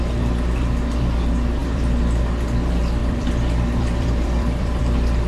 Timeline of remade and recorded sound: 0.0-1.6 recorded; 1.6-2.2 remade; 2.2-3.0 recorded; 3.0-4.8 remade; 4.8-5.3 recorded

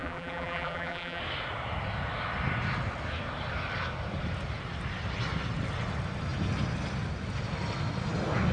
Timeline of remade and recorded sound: 0.0-1.2 remade; 1.2-8.5 recorded

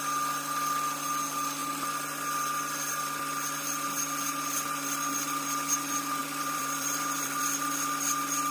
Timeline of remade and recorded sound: 0.0-6.2 recorded; 6.2-7.4 remade; 7.4-8.5 recorded